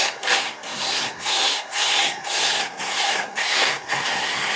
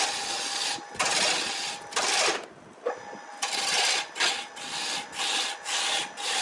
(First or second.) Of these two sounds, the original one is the second